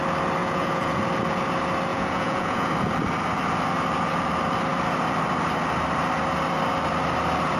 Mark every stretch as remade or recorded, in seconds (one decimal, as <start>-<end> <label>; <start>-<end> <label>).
0.0-0.4 recorded; 0.4-1.0 remade; 1.0-1.9 recorded; 1.9-2.7 remade; 2.7-7.6 recorded